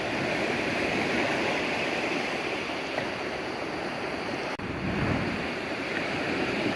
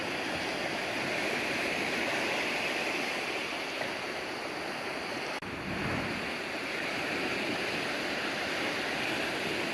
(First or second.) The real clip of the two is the second